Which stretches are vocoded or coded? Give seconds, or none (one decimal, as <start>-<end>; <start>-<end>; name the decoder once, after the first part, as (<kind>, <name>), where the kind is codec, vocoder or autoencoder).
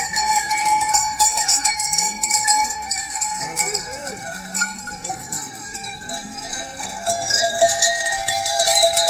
0.0-9.1 (codec, SNAC)